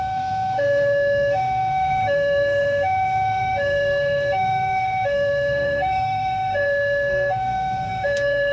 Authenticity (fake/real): fake